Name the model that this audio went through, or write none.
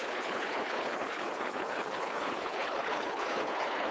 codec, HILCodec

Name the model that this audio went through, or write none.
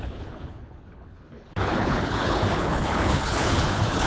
codec, HILCodec